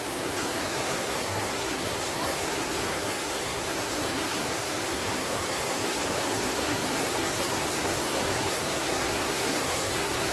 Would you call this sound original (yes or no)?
no